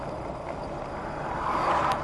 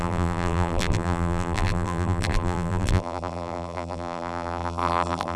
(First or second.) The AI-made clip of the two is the second